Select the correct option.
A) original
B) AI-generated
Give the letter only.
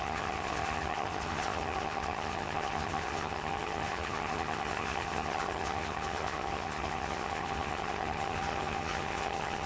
B